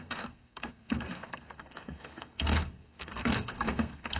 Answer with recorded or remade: remade